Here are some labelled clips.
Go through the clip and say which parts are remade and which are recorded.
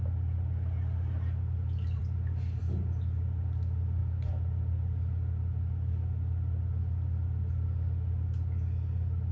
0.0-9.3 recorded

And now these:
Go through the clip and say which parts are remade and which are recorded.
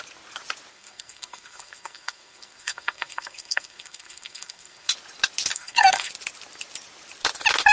0.0-0.7 recorded; 0.7-4.9 remade; 4.9-5.5 recorded; 5.5-6.1 remade; 6.1-7.7 recorded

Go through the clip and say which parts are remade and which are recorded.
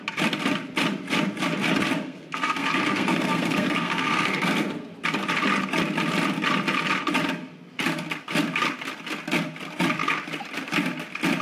0.0-2.0 recorded; 2.0-4.9 remade; 4.9-11.4 recorded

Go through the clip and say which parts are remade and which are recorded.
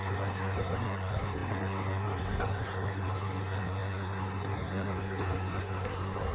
0.0-6.3 remade